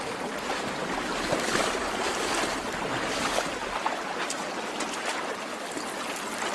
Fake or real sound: real